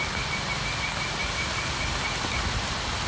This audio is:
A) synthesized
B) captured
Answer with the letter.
B